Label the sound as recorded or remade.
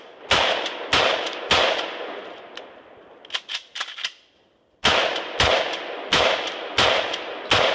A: recorded